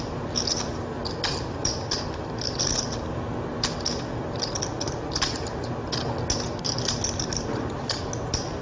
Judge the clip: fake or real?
real